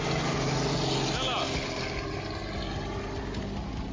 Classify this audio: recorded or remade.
recorded